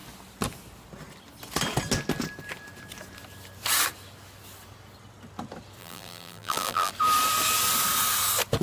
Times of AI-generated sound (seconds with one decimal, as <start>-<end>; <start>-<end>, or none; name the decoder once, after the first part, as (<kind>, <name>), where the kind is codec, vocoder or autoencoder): 5.8-6.9 (vocoder, BigVGAN v2)